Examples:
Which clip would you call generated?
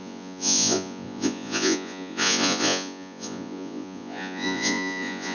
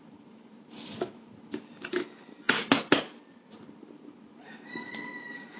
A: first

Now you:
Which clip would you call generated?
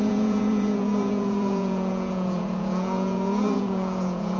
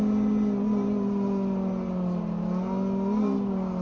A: first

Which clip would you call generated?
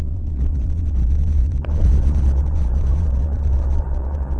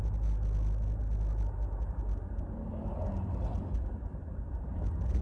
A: first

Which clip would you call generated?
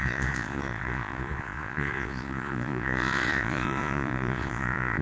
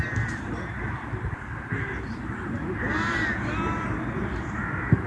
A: first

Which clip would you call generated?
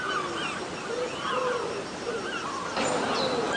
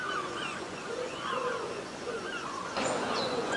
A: second